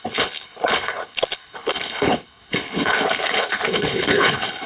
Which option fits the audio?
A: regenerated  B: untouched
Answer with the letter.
A